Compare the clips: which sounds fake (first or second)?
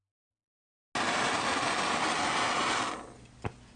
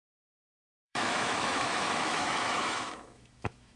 second